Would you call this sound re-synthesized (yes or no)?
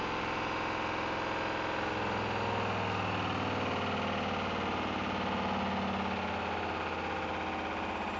no